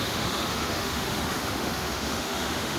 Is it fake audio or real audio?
fake